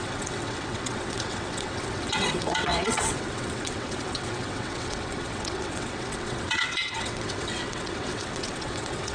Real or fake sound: fake